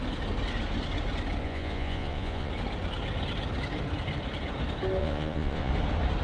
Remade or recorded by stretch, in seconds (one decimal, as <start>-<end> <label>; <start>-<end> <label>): 0.0-1.4 recorded; 1.4-2.5 remade; 2.5-5.0 recorded; 5.0-5.7 remade; 5.7-6.2 recorded